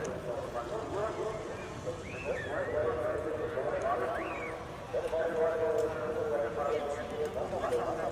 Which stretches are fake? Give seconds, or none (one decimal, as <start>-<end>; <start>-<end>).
1.0-2.3; 2.8-3.3; 4.9-6.8